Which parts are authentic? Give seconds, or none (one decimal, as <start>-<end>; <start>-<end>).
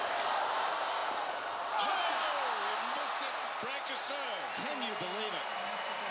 0.0-6.1